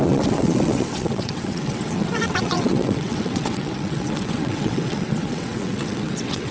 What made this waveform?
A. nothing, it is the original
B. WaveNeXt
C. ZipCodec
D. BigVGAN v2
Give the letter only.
B